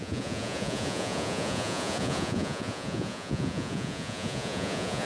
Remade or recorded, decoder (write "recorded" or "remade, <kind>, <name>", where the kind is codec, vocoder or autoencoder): remade, vocoder, Vocos